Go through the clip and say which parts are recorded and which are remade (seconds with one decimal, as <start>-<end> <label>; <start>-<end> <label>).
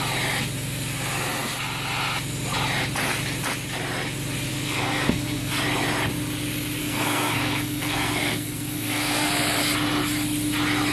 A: 0.0-4.5 recorded; 4.5-5.5 remade; 5.5-6.8 recorded; 6.8-9.6 remade; 9.6-10.9 recorded